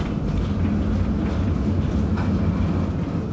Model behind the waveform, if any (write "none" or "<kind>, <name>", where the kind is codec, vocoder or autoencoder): none